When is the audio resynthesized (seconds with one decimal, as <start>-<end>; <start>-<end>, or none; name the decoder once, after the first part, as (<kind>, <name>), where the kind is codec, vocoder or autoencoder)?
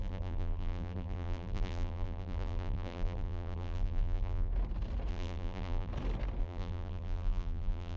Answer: 0.0-4.5 (vocoder, BigVGAN v2); 5.1-5.9; 6.4-8.0